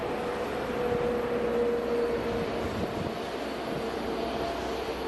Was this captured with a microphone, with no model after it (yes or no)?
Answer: yes